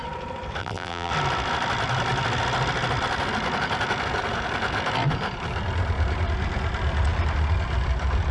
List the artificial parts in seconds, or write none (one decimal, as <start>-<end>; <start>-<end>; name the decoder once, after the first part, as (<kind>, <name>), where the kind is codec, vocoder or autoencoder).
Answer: 0.6-1.1 (vocoder, BigVGAN v2)